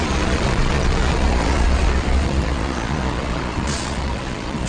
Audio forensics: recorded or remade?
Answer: remade